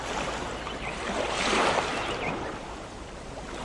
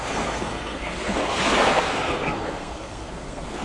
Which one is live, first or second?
first